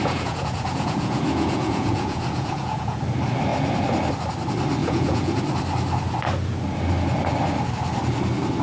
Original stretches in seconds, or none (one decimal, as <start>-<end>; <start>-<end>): 3.0-4.8; 5.4-8.6